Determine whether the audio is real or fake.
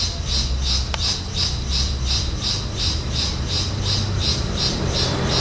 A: real